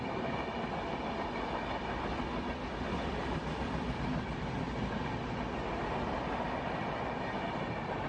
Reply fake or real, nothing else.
real